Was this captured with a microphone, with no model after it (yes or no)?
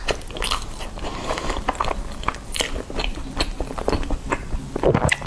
no